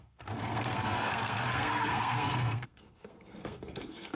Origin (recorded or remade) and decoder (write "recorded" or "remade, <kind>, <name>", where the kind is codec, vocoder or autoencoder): remade, codec, SNAC